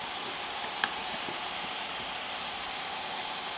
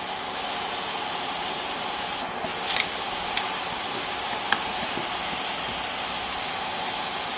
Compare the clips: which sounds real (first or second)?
second